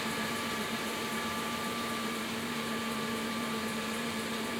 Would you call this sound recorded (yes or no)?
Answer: no